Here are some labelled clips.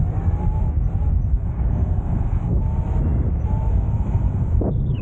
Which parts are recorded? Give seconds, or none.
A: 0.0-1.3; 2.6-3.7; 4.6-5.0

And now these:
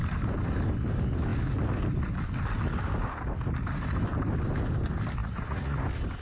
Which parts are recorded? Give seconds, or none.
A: 0.0-5.2; 5.8-6.2

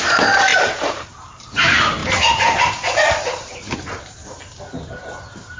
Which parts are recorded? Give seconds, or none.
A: 0.0-0.5; 1.1-2.0; 4.4-5.6